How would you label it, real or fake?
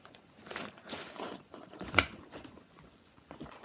fake